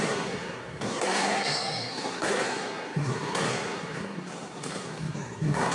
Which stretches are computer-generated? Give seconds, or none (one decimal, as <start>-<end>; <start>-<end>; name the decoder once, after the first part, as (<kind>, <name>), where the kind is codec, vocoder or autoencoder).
0.0-5.7 (codec, SNAC)